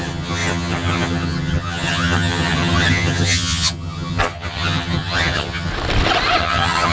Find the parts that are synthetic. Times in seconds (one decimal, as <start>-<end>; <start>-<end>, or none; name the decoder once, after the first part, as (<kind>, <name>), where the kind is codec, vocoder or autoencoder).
0.0-5.7 (vocoder, HiFi-GAN); 6.4-6.9